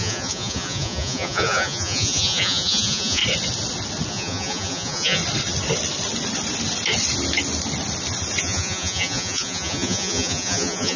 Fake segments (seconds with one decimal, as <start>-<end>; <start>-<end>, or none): 0.0-3.2; 4.1-5.2; 8.4-11.0